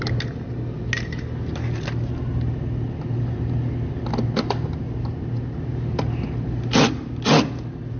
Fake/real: real